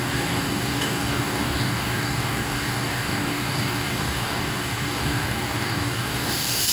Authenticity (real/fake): fake